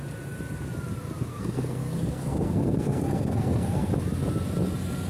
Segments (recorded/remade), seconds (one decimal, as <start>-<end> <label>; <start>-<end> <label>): 0.0-1.3 recorded; 1.3-3.9 remade; 3.9-5.1 recorded